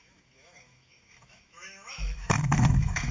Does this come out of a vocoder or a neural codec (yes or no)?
yes